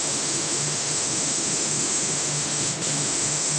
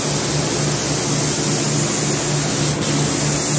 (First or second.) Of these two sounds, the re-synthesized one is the first